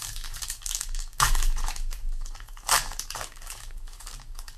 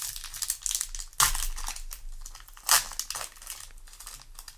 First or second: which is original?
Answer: second